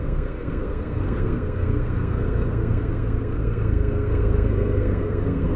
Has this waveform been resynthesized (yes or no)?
yes